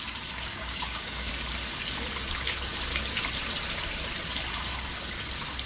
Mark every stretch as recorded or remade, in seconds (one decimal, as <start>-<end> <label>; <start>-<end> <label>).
0.0-0.5 recorded; 0.5-1.3 remade; 1.3-5.7 recorded